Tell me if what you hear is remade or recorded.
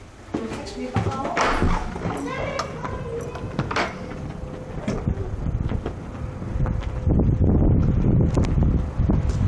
recorded